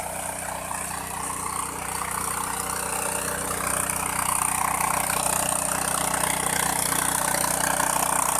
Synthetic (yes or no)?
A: no